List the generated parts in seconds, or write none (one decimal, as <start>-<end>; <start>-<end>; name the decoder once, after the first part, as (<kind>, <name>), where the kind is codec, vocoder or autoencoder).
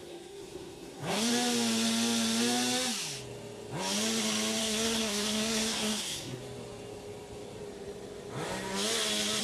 0.0-1.3 (codec, SNAC); 4.6-6.4